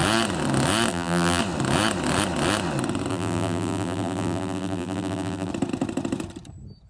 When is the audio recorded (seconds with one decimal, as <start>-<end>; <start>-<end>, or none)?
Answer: 0.0-0.9; 1.4-3.1; 5.5-6.9

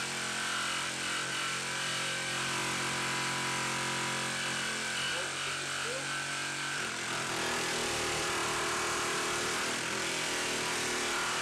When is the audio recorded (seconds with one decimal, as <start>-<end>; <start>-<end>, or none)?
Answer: 2.6-6.3; 8.4-9.8

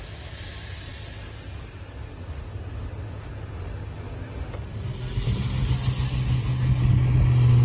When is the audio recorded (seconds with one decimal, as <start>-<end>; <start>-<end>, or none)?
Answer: 0.0-7.6